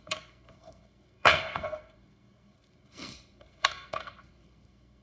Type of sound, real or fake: fake